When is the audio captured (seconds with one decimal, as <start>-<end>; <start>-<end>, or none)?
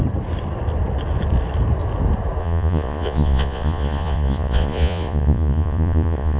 0.0-2.4